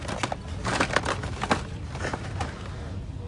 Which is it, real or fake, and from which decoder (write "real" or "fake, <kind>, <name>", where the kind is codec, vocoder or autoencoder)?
real